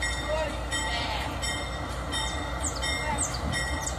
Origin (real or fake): real